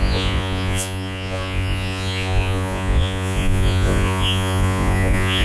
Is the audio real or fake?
fake